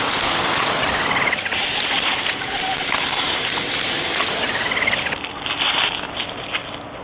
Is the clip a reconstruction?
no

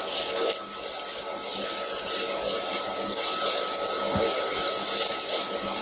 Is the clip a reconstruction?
no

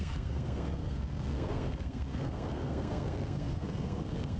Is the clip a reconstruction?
yes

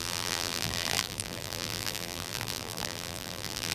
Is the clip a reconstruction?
yes